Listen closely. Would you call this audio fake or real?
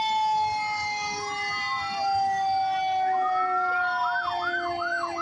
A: real